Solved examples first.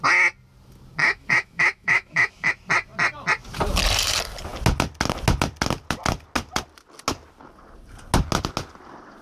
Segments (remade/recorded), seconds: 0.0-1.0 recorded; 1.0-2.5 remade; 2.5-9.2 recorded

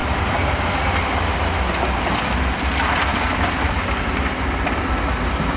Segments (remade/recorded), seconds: 0.0-0.8 remade; 0.8-3.1 recorded; 3.1-4.9 remade; 4.9-5.6 recorded